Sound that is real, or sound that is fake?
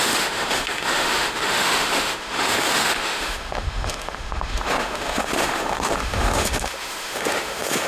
fake